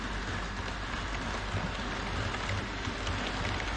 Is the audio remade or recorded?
recorded